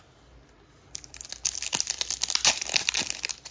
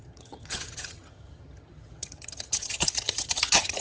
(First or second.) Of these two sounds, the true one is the first